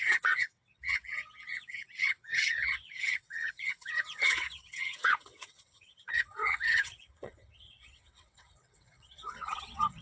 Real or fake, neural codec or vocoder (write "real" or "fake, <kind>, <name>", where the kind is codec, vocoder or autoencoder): fake, vocoder, WaveNeXt